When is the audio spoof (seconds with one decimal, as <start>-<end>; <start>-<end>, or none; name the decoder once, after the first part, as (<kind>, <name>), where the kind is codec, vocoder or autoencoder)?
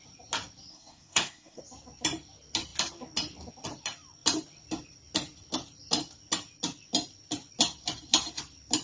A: 0.7-1.6 (codec, SNAC)